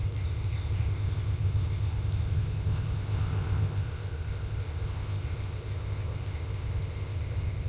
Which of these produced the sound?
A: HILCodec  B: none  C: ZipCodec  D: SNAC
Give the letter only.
C